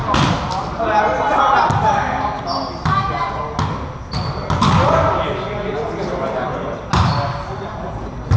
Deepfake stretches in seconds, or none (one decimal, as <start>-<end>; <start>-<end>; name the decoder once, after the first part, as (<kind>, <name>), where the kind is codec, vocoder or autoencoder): none